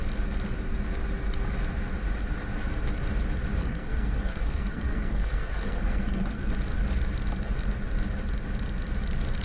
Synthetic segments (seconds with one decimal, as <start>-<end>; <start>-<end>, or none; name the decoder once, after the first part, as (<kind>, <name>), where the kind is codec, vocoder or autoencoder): 3.6-6.5 (codec, SNAC)